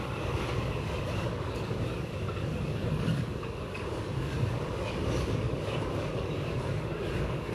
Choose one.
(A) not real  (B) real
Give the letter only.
A